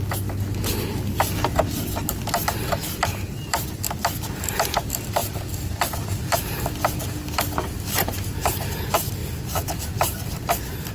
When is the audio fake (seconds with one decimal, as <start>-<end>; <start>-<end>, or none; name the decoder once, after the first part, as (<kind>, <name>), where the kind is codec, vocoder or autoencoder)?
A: 3.1-3.7 (vocoder, BigVGAN v2); 5.2-5.9; 9.2-10.5